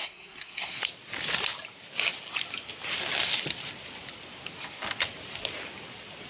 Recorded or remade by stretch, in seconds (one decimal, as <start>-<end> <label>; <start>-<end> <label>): 0.0-0.8 remade; 0.8-6.3 recorded